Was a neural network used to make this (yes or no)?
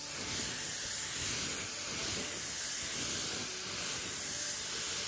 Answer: no